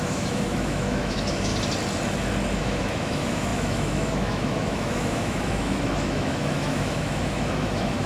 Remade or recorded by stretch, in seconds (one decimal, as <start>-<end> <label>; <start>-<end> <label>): 0.0-1.5 remade; 1.5-2.6 recorded; 2.6-8.1 remade